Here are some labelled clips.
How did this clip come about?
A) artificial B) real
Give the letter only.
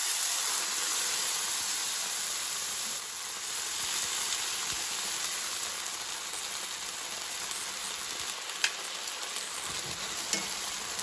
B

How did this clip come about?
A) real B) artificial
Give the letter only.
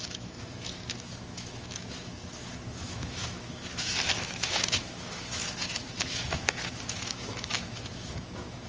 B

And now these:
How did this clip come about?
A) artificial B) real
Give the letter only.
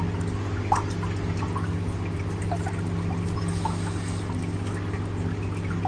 B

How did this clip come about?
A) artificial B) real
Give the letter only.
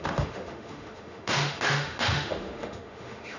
A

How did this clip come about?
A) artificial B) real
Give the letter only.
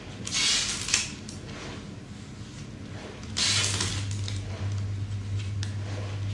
B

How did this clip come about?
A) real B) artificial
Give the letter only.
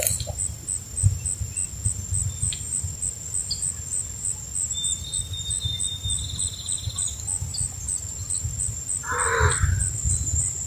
A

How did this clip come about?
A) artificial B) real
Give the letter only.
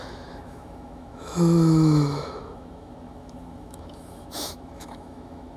A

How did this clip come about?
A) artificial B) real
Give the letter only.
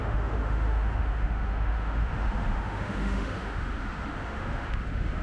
A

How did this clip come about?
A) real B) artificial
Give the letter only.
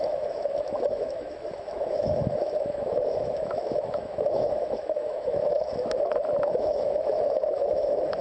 B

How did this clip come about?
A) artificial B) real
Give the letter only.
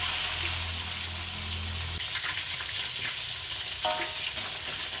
B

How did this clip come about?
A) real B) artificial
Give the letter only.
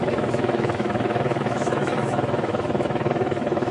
B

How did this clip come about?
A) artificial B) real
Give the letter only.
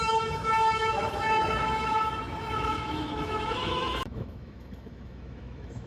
A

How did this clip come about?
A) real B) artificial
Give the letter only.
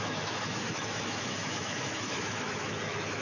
B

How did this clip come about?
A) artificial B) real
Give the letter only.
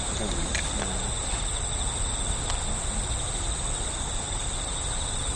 B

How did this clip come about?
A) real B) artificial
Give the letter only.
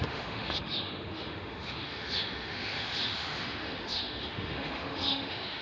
B